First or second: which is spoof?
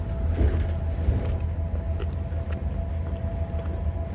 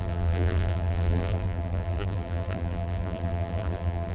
second